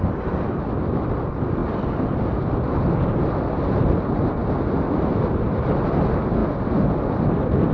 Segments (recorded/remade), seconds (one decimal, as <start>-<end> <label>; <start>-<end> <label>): 0.0-7.7 recorded